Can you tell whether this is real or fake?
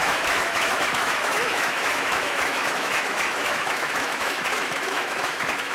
fake